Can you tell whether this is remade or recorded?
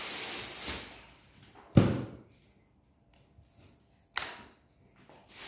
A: recorded